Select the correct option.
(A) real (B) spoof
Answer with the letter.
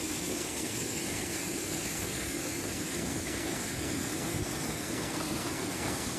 B